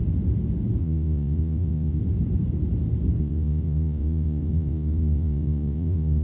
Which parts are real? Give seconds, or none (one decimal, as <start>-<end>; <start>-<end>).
0.0-0.8; 2.0-3.2